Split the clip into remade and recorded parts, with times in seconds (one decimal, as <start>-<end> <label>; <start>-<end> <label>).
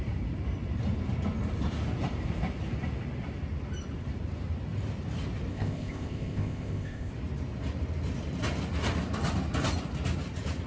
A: 0.0-5.5 recorded; 5.5-7.1 remade; 7.1-10.7 recorded